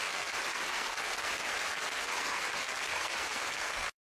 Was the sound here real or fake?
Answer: fake